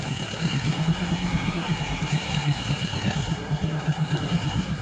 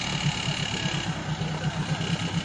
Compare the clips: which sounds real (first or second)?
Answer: second